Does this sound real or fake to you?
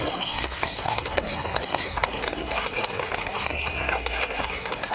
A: fake